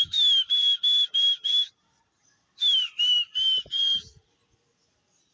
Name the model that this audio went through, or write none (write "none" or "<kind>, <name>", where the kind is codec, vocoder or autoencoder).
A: none